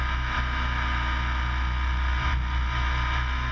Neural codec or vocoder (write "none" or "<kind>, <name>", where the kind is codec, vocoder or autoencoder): none